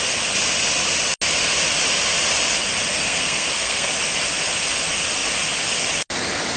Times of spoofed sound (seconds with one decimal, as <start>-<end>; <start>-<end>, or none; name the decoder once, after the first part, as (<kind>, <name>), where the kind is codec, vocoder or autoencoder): 2.9-3.9 (codec, SNAC)